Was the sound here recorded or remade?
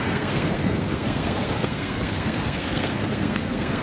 remade